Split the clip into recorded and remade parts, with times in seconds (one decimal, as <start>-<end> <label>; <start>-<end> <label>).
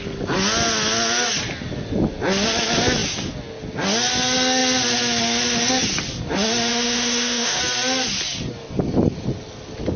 0.0-6.7 recorded; 6.7-7.6 remade; 7.6-10.0 recorded